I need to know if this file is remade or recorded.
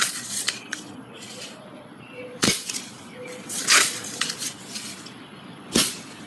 remade